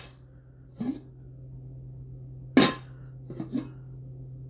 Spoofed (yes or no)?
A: no